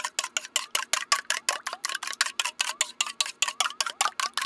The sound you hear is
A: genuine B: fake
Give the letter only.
A